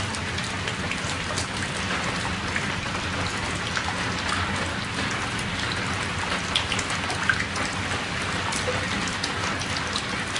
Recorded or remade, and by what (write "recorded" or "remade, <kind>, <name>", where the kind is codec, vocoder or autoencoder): recorded